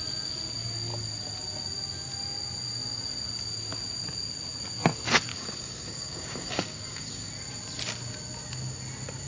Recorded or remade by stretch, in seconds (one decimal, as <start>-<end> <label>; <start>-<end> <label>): 0.0-5.3 recorded; 5.3-7.3 remade; 7.3-9.3 recorded